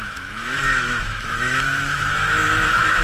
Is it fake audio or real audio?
fake